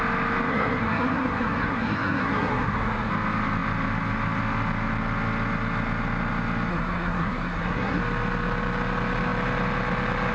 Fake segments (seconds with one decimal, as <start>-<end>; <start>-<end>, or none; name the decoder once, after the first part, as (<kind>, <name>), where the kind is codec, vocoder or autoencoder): 0.5-3.1 (codec, SNAC); 6.7-8.0